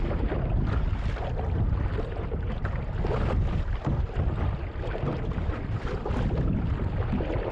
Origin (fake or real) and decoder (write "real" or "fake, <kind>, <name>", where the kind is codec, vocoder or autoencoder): real